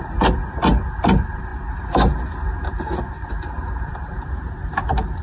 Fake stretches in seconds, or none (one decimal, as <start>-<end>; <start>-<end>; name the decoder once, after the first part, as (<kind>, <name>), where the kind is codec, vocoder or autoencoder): none